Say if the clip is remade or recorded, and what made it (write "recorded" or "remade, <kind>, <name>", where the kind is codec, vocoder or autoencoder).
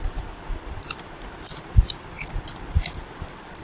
recorded